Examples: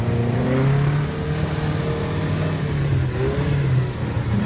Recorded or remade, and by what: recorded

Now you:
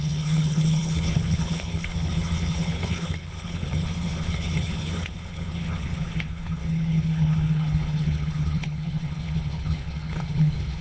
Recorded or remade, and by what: remade, codec, HILCodec